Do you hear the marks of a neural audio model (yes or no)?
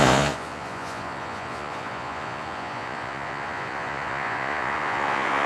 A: yes